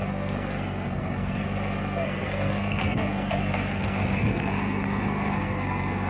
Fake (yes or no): yes